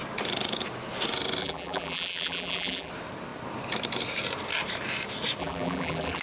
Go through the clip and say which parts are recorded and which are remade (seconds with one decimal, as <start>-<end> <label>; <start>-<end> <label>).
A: 0.0-1.4 recorded; 1.4-2.9 remade; 2.9-5.4 recorded; 5.4-6.2 remade